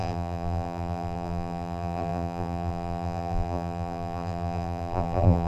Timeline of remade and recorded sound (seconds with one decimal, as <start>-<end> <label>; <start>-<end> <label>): 0.0-5.5 remade